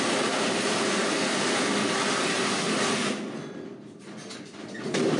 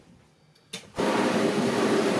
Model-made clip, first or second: first